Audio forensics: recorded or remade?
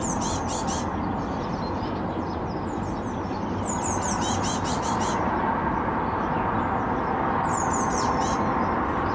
recorded